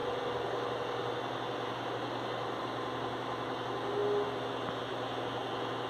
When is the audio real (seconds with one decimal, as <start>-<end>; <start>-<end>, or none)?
2.6-5.9